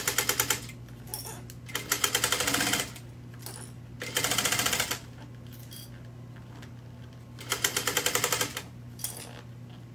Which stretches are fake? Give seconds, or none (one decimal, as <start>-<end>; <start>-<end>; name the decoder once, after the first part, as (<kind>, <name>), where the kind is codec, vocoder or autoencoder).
none